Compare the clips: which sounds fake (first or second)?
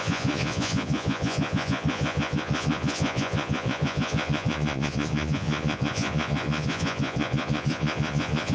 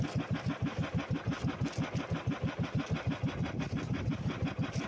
first